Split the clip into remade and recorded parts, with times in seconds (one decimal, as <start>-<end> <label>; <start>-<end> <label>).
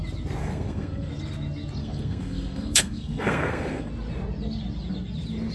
0.0-0.4 recorded; 0.4-1.1 remade; 1.1-1.8 recorded; 1.8-3.9 remade; 3.9-5.5 recorded